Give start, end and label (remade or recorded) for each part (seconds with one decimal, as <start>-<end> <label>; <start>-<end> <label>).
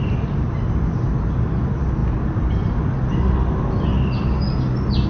0.0-5.1 recorded